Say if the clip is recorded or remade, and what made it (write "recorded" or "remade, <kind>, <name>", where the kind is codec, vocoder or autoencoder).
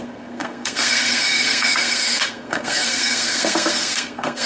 remade, codec, SNAC